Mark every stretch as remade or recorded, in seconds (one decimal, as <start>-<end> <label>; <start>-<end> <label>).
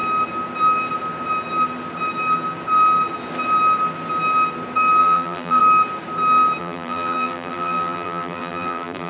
0.0-5.0 recorded; 5.0-5.6 remade; 5.6-6.6 recorded; 6.6-9.1 remade